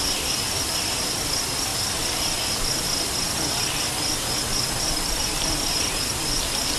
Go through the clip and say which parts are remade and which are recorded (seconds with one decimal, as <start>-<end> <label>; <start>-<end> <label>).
0.0-6.8 recorded